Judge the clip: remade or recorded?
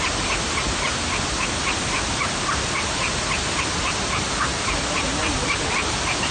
recorded